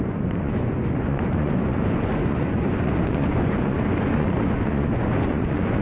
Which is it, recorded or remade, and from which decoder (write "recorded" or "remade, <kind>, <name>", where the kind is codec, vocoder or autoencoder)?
remade, vocoder, Vocos